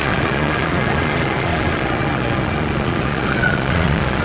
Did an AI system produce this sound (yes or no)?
yes